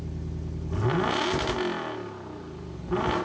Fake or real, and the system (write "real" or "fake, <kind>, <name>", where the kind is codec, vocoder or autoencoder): real